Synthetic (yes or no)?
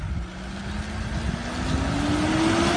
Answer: no